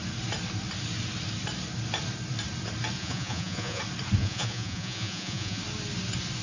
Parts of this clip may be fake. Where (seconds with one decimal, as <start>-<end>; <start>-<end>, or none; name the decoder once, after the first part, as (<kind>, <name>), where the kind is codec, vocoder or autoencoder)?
3.0-3.8 (vocoder, Vocos); 4.2-5.6